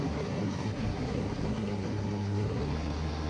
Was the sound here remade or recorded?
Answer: remade